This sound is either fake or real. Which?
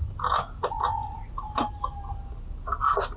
real